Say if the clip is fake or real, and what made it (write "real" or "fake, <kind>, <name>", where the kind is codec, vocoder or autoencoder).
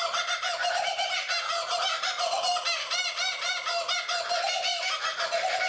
real